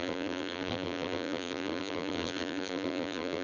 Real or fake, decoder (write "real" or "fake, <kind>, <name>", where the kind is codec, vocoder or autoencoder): fake, vocoder, BigVGAN v2